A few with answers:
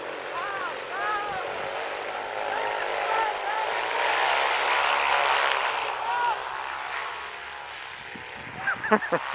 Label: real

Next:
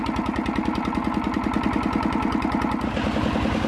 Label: real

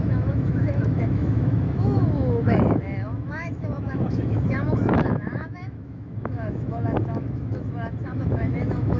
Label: fake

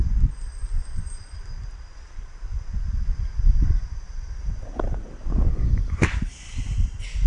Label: real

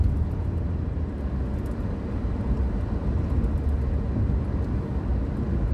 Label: real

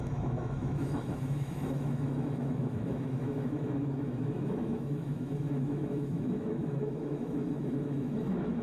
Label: fake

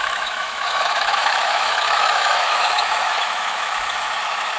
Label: fake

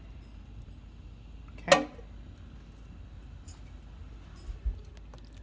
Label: real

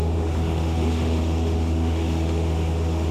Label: fake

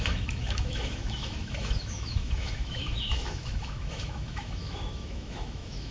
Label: fake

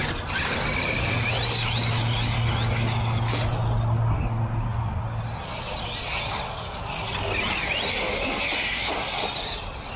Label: real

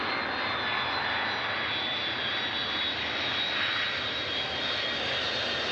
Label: real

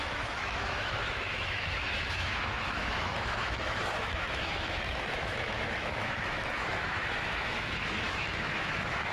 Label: fake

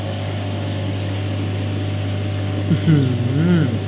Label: real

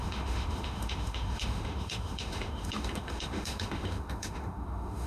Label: fake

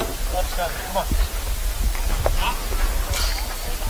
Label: real